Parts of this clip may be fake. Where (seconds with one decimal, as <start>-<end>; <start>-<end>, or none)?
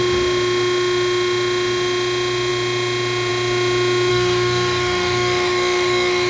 4.1-6.3